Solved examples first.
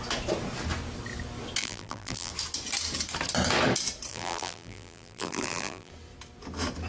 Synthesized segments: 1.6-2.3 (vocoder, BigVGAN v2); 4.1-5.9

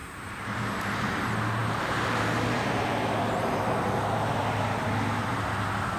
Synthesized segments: 0.0-0.9 (vocoder, BigVGAN v2); 1.6-4.4

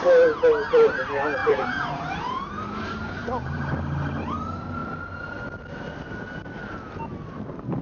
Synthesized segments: 1.4-2.5 (vocoder, BigVGAN v2)

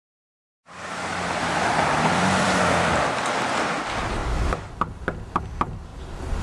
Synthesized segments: 0.0-3.8 (vocoder, BigVGAN v2); 5.9-6.4

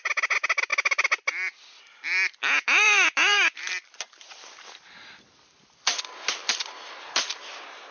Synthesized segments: 0.7-4.8 (vocoder, BigVGAN v2); 6.4-7.3

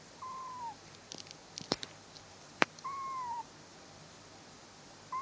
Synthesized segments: 0.0-1.4 (vocoder, BigVGAN v2); 2.3-5.2

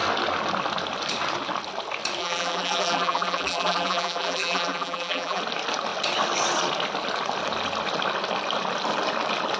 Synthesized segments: 2.2-5.4 (vocoder, BigVGAN v2)